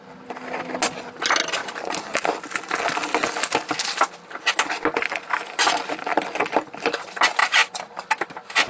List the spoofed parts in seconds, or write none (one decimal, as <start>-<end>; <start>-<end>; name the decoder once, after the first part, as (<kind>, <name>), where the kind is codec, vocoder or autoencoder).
none